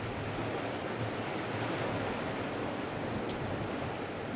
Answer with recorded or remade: recorded